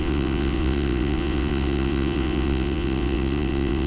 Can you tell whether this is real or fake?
fake